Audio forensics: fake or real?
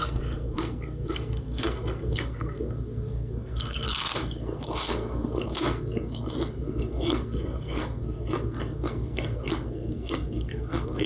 fake